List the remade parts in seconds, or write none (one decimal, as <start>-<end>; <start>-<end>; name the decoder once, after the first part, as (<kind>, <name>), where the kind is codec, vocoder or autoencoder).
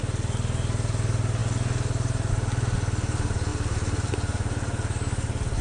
3.5-4.1 (vocoder, BigVGAN v2)